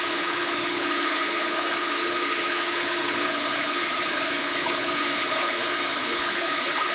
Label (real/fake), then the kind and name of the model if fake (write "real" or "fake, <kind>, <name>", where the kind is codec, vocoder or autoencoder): fake, codec, HILCodec